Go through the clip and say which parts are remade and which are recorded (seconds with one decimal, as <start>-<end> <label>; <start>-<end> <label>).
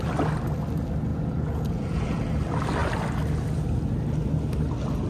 0.0-1.1 recorded; 1.1-2.3 remade; 2.3-5.1 recorded